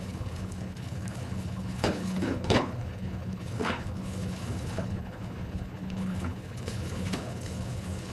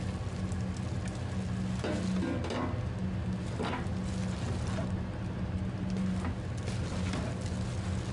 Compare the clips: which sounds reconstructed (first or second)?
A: first